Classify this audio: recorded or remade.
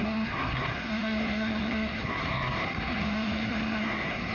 remade